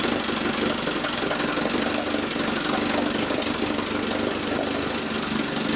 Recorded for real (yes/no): yes